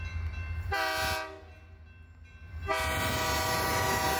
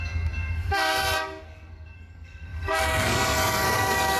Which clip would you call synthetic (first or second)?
second